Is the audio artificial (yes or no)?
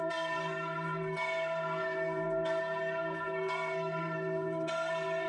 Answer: yes